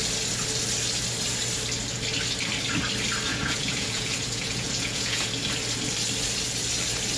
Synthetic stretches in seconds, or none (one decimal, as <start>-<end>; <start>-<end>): 3.3-5.3